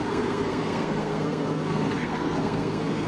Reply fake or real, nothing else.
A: fake